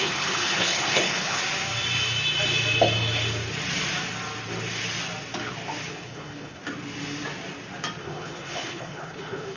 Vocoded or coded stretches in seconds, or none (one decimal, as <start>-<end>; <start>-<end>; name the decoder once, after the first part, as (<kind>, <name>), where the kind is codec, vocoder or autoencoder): 0.0-1.4 (codec, HILCodec); 5.9-6.6; 8.0-9.6